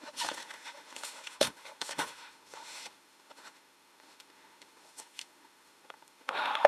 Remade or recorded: remade